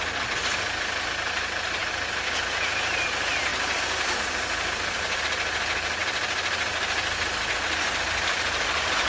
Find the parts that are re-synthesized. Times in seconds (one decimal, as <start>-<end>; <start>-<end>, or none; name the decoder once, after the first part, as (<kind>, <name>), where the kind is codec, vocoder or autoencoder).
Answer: none

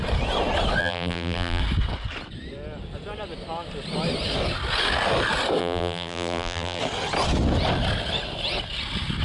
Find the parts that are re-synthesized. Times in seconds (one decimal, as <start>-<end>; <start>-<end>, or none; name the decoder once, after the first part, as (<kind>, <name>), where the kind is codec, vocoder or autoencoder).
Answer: 0.8-1.6 (vocoder, BigVGAN v2); 5.6-6.8

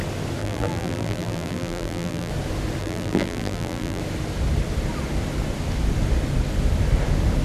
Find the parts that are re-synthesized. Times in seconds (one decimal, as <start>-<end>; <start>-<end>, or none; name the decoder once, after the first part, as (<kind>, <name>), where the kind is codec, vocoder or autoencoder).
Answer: 0.4-2.3 (vocoder, BigVGAN v2); 2.8-4.0